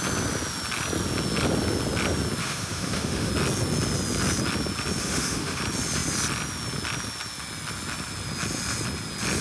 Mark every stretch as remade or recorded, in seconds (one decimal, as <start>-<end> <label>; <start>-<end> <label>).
0.0-2.4 recorded; 2.4-3.3 remade; 3.3-5.0 recorded; 5.0-5.6 remade; 5.6-9.4 recorded